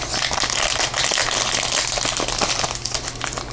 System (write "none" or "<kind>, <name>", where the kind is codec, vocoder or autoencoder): none